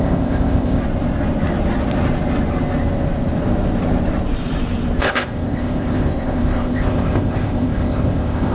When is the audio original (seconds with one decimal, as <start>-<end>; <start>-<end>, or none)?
0.8-5.0